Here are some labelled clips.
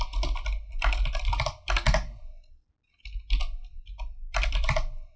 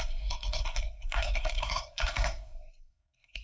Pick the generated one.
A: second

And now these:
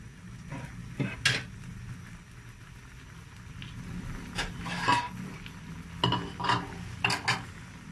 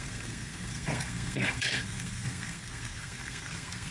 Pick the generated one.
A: second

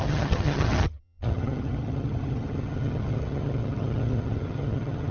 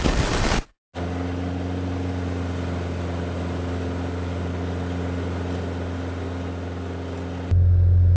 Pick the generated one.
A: first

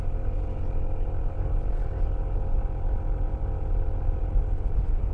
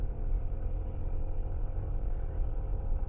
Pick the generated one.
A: second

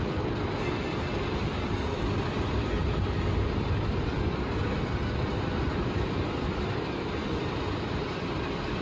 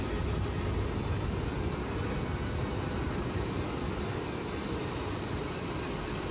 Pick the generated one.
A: first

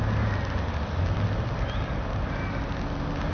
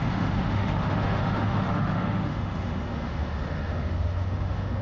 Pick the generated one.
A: second